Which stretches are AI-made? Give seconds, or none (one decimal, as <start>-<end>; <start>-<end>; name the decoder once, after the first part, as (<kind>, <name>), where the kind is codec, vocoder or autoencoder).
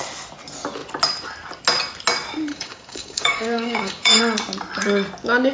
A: 2.5-4.2 (codec, DAC)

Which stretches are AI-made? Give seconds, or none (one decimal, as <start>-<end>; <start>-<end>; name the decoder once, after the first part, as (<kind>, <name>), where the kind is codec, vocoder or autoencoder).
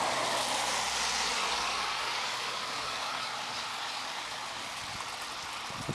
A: 1.3-4.8 (codec, DAC)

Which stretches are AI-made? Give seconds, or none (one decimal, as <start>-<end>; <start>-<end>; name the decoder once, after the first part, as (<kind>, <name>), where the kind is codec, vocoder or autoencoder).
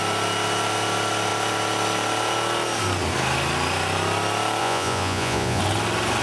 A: 4.6-5.6 (vocoder, Vocos)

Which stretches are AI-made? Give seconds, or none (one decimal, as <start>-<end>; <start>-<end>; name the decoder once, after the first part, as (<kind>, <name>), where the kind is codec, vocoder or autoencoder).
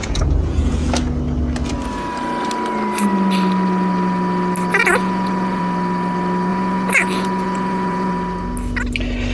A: 0.0-0.9 (vocoder, Vocos); 4.8-5.6; 6.5-8.1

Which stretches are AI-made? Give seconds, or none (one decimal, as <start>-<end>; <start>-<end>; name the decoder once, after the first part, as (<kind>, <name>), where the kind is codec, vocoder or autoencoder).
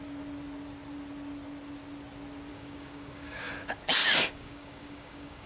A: 2.5-3.5 (codec, DAC); 4.0-5.5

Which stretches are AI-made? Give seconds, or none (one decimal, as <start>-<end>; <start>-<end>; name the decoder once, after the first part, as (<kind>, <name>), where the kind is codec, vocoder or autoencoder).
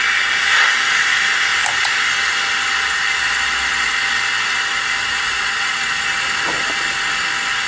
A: 5.0-6.1 (vocoder, Vocos)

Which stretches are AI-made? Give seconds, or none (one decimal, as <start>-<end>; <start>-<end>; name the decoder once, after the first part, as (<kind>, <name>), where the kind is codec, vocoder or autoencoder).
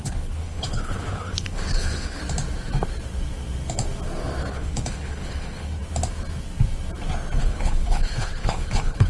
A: 0.0-2.2 (codec, HILCodec); 4.5-5.8; 7.4-9.1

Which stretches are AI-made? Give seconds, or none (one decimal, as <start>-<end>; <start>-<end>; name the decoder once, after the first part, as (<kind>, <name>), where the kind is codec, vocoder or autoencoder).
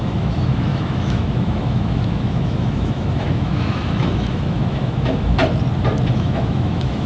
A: 0.0-5.4 (autoencoder, DAC-VAE); 6.1-7.1